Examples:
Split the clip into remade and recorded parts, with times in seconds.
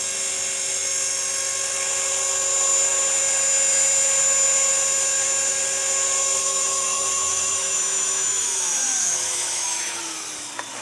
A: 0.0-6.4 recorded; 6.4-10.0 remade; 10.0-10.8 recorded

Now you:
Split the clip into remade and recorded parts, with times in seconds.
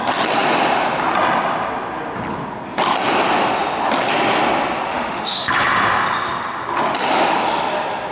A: 0.0-4.9 recorded; 4.9-5.5 remade; 5.5-8.1 recorded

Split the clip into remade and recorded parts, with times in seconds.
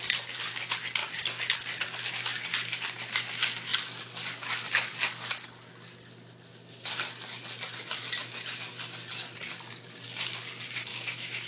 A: 0.0-10.9 recorded; 10.9-11.5 remade